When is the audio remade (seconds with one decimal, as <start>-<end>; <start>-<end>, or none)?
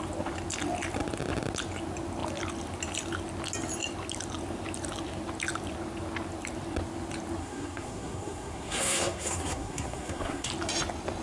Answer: 7.4-10.5